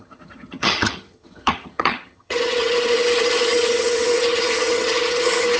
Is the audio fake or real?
fake